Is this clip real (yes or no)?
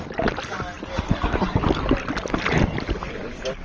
yes